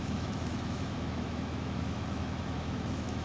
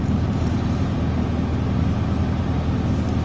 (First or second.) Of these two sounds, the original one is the second